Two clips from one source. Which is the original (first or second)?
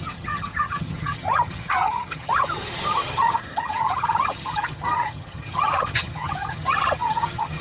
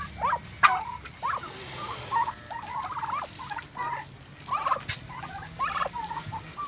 second